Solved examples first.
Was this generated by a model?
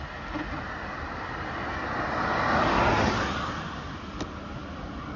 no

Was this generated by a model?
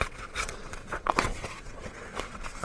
yes